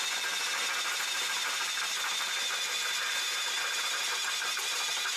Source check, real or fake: real